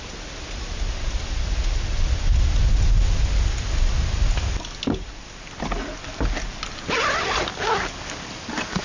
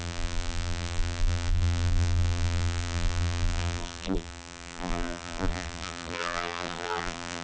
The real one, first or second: first